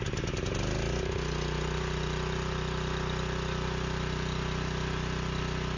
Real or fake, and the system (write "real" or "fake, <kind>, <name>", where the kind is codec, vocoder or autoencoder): real